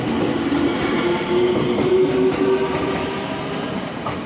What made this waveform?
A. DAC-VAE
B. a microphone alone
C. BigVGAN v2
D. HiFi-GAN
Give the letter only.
B